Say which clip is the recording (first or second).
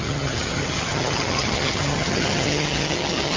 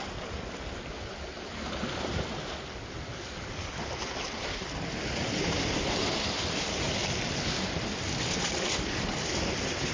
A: second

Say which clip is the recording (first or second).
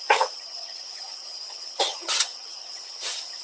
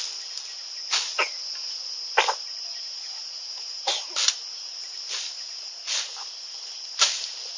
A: second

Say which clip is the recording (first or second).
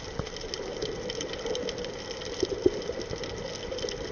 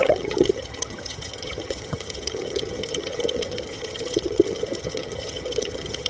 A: first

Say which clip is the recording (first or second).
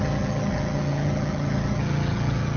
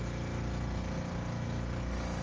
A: second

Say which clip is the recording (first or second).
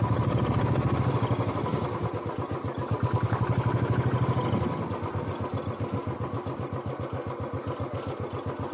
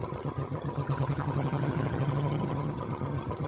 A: first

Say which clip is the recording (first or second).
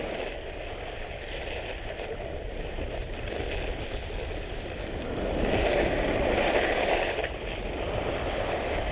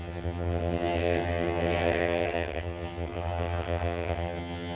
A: first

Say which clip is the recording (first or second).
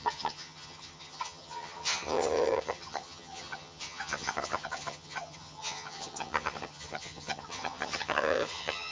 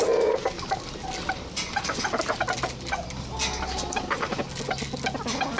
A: second